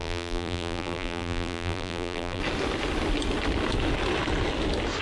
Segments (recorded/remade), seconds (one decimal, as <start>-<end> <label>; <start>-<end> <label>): 0.0-2.4 remade; 2.4-5.0 recorded